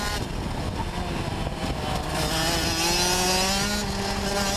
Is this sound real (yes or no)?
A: yes